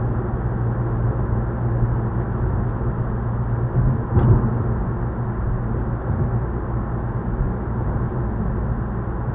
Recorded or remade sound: recorded